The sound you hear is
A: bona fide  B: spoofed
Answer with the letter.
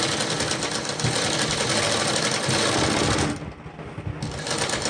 A